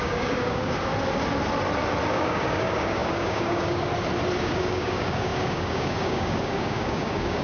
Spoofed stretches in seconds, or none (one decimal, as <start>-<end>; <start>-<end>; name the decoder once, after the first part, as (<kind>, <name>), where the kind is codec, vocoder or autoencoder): 0.0-0.9 (codec, DAC); 2.1-3.9; 4.4-7.4